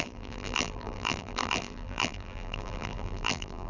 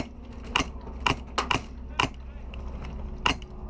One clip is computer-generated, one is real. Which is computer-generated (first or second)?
first